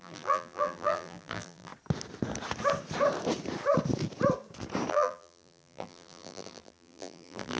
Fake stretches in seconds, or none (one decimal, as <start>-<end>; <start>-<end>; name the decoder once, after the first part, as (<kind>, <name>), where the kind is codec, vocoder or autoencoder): 0.0-1.7 (vocoder, BigVGAN v2); 4.9-7.6